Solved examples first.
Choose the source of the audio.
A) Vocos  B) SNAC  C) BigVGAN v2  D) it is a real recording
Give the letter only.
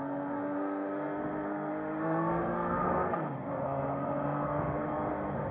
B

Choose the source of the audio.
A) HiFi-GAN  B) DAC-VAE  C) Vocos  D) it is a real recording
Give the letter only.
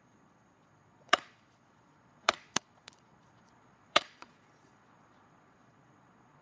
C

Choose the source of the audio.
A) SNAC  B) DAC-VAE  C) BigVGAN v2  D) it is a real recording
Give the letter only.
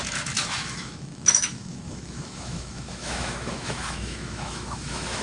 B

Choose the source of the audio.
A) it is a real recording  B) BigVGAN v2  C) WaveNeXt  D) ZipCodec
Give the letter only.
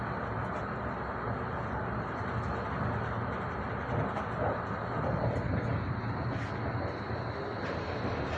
A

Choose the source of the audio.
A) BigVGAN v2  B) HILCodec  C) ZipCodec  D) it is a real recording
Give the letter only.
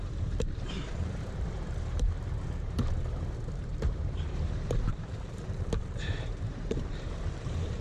A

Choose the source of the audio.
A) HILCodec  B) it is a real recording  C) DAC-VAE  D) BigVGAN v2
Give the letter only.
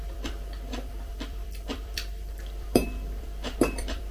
D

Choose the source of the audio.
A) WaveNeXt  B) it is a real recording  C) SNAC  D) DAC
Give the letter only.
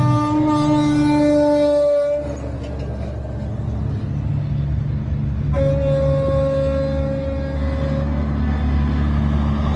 B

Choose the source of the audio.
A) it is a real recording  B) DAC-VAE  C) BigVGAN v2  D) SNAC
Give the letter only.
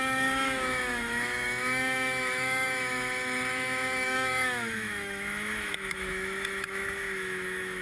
B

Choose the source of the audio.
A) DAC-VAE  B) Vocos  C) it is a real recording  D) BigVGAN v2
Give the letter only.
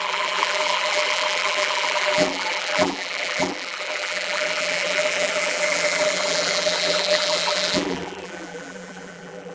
D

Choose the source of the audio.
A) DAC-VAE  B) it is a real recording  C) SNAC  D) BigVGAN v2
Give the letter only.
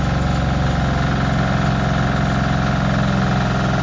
B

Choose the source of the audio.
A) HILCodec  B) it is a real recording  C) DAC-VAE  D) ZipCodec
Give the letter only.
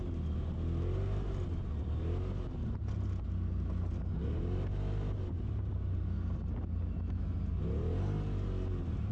B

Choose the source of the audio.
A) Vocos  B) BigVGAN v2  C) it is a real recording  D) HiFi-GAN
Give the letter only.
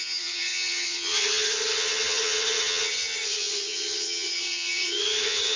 D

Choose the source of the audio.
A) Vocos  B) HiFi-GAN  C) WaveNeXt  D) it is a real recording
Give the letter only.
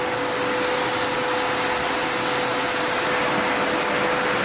D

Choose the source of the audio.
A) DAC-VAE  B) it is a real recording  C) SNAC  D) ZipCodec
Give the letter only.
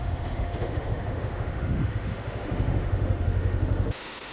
A